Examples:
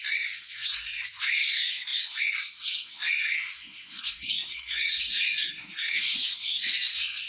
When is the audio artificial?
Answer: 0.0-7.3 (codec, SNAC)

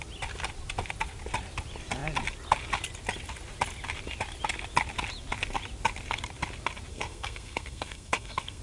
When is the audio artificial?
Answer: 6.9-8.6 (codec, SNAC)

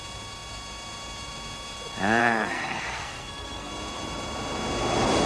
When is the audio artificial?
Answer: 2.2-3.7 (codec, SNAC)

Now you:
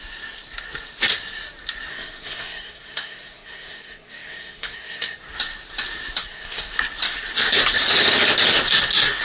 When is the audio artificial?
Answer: 1.9-5.2 (codec, SNAC); 6.2-6.7